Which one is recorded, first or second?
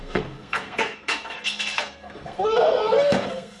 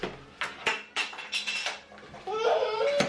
second